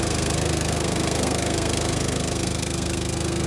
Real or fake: fake